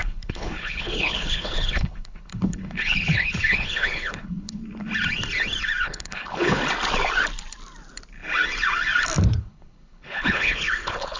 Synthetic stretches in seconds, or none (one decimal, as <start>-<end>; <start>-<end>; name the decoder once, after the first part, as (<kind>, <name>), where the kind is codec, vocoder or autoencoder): 0.0-4.6 (codec, HILCodec); 5.8-6.6; 9.4-11.2